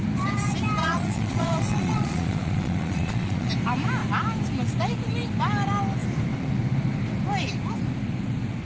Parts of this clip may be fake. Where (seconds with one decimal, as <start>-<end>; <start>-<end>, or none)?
0.8-3.5